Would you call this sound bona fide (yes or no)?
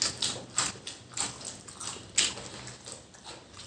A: yes